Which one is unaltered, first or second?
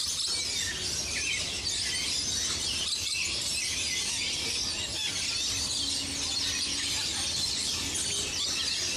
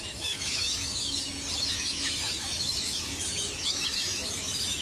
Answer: first